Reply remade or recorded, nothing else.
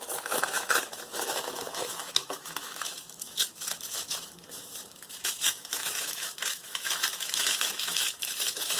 remade